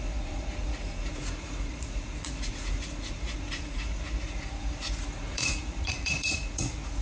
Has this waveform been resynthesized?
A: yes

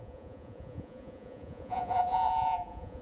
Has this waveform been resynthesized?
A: yes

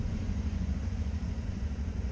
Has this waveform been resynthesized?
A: yes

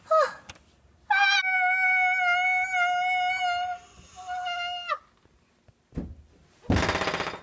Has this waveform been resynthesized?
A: no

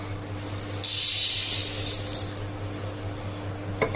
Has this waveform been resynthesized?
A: no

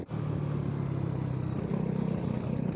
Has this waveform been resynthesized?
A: no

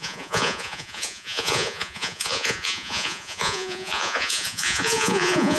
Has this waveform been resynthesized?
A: yes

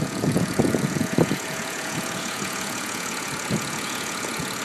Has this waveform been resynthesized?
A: yes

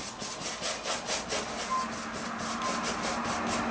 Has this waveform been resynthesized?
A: no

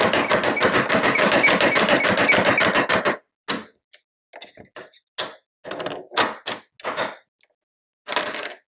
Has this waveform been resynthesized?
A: no